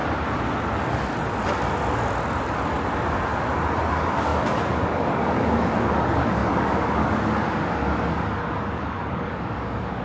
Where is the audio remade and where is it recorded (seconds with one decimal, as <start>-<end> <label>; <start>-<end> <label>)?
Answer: 0.0-3.9 recorded; 3.9-10.0 remade